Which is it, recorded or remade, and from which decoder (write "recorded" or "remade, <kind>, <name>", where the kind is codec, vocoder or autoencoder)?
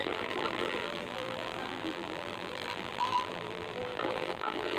remade, vocoder, BigVGAN v2